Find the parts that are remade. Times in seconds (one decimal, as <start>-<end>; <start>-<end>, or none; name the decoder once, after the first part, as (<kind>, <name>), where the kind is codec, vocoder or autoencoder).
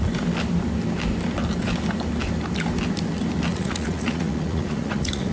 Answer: 3.5-5.3 (vocoder, Vocos)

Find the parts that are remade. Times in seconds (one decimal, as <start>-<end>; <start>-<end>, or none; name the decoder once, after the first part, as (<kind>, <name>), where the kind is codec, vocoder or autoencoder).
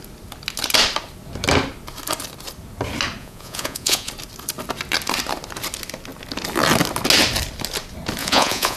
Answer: 3.2-4.1 (vocoder, Vocos); 8.2-8.8